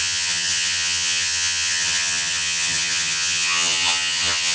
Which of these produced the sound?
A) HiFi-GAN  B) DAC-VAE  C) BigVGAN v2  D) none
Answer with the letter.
A